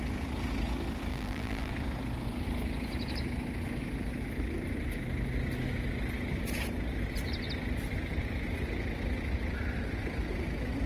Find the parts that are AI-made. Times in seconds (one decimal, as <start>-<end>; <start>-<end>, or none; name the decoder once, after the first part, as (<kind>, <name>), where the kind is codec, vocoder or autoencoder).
1.1-1.7 (vocoder, BigVGAN v2)